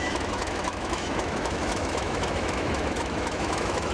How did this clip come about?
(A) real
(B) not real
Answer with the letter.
B